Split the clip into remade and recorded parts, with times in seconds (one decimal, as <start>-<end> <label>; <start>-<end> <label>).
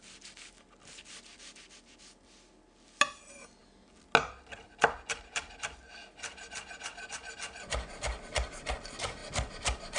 0.0-10.0 recorded